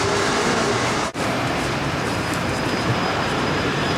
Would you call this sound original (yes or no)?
no